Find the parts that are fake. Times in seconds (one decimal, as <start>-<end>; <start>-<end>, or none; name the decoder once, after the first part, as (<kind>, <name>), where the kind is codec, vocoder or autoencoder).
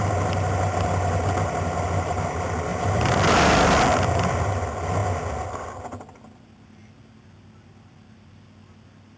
2.7-3.8 (vocoder, BigVGAN v2)